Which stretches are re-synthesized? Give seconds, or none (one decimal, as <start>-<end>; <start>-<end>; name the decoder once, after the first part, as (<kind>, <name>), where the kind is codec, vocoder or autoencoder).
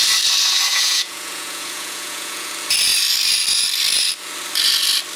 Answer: 0.7-2.5 (vocoder, Vocos)